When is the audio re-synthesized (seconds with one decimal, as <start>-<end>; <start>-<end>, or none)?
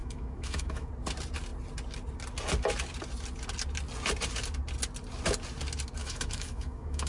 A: 0.0-0.9; 6.0-7.1